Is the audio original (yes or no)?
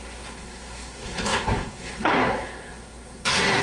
no